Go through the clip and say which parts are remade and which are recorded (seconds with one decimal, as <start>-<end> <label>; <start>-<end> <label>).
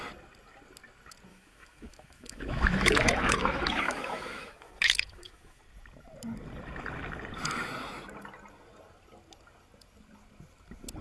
0.0-1.3 recorded; 1.3-5.6 remade; 5.6-11.0 recorded